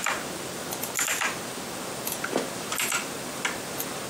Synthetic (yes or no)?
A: no